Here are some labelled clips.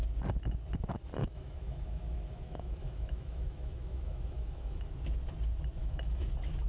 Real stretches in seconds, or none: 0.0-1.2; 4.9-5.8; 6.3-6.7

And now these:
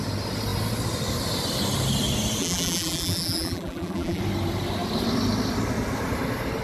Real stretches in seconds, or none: 0.0-2.4; 4.2-6.6

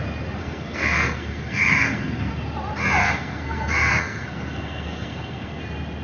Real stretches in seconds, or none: 0.0-0.4; 2.3-3.0; 5.6-6.0

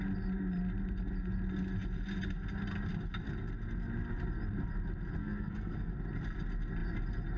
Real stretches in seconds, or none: 0.0-5.2; 5.9-7.4